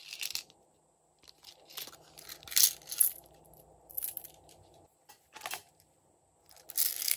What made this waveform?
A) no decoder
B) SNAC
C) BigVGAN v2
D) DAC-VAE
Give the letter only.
A